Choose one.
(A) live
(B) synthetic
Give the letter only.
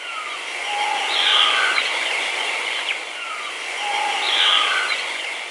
B